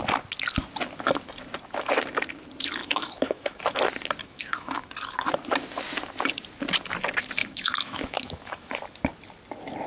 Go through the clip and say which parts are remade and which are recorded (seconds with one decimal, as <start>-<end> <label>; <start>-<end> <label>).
0.0-2.8 recorded; 2.8-3.6 remade; 3.6-4.2 recorded; 4.2-4.9 remade; 4.9-7.4 recorded; 7.4-8.8 remade; 8.8-9.9 recorded